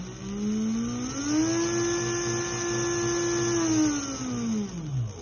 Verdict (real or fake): real